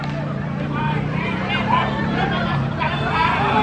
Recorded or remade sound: remade